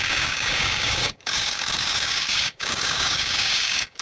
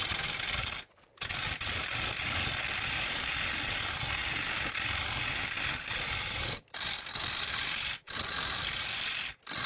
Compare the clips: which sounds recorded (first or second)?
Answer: second